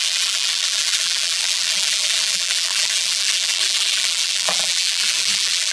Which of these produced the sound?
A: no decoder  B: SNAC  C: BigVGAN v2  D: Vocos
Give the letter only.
C